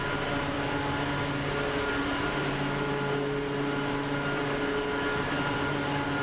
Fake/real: real